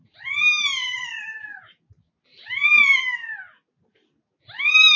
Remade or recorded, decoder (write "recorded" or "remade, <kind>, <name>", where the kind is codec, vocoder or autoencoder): recorded